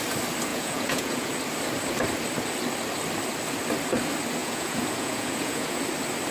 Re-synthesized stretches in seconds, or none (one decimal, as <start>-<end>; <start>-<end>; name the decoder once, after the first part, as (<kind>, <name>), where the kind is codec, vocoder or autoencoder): 0.5-1.3 (vocoder, Vocos); 4.4-5.8